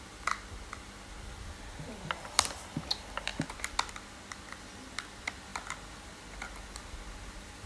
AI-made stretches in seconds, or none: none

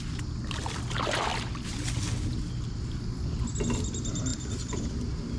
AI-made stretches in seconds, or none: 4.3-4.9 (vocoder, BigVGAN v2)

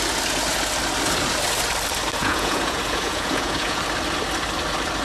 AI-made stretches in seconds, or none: 2.2-3.8 (vocoder, Vocos)